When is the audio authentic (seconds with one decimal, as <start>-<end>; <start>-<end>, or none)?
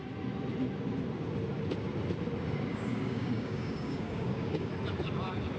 0.0-2.7; 4.7-5.6